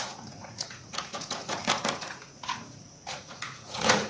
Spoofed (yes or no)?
yes